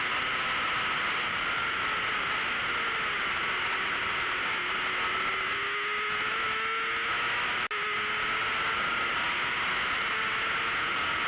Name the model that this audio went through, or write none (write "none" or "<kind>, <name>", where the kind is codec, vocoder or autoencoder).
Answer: none